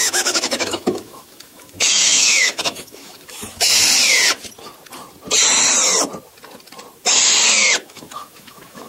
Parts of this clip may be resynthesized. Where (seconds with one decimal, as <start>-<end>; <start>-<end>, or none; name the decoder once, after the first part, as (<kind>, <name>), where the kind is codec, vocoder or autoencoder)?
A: 0.0-3.7 (autoencoder, DAC-VAE); 7.8-8.9